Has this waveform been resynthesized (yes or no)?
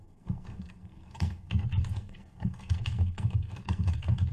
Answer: yes